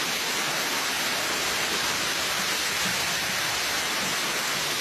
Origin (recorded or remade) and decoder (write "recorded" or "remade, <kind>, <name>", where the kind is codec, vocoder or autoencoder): recorded